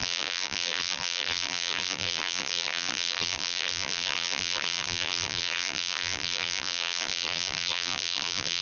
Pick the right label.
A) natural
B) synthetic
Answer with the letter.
B